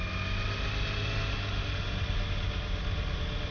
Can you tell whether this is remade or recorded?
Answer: recorded